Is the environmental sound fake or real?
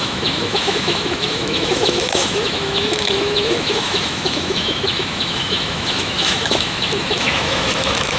fake